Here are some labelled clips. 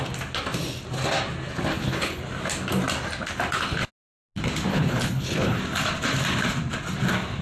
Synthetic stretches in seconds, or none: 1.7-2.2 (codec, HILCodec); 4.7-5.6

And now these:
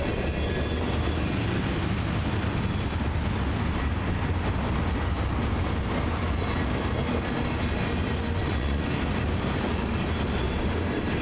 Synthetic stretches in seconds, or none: 8.4-9.0 (vocoder, Vocos)

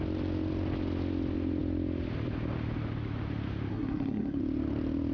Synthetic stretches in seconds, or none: 3.7-4.4 (codec, SNAC)

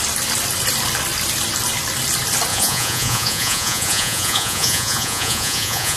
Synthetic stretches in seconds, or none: 2.5-6.0 (vocoder, Vocos)

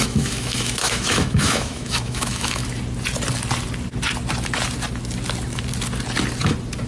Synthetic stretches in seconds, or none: 0.0-2.6 (autoencoder, DAC-VAE)

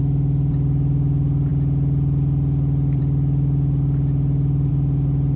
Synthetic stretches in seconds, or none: none